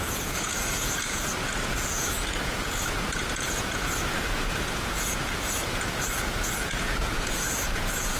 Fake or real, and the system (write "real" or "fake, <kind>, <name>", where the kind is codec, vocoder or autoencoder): fake, vocoder, Vocos